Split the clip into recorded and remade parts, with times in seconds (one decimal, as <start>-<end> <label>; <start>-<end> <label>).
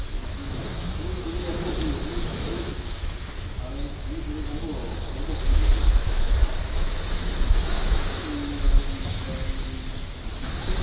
0.0-4.7 remade; 4.7-5.9 recorded; 5.9-9.3 remade; 9.3-9.9 recorded; 9.9-10.8 remade